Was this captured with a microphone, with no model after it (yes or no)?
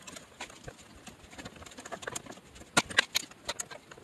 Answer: yes